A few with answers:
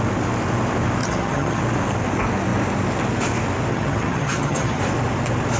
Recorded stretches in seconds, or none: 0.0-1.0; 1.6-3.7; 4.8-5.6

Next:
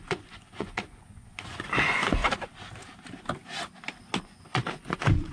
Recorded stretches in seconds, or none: 2.2-4.2